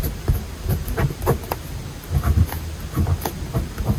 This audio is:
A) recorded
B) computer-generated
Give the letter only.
A